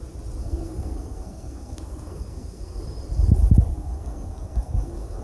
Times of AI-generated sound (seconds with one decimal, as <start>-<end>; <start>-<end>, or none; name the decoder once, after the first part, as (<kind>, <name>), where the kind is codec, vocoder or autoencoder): 0.4-2.8 (codec, SNAC); 3.7-5.2